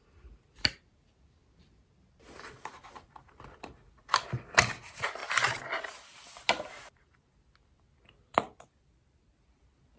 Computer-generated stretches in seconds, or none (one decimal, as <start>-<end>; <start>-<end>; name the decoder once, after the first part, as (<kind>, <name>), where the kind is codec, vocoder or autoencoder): none